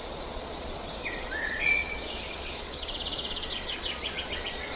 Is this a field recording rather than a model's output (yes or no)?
no